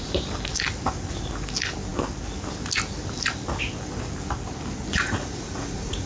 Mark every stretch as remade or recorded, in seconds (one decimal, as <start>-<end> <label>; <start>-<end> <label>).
0.0-4.9 recorded; 4.9-6.1 remade